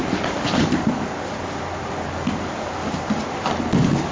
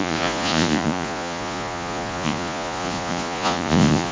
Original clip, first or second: first